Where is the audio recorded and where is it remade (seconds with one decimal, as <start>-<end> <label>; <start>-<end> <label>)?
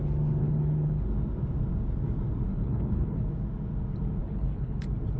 0.0-0.4 recorded; 0.4-1.0 remade; 1.0-2.5 recorded; 2.5-3.2 remade; 3.2-4.2 recorded; 4.2-4.8 remade; 4.8-5.2 recorded